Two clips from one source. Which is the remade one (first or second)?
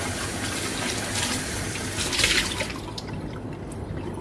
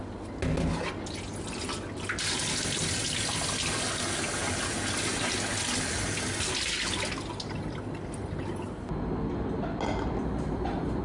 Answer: first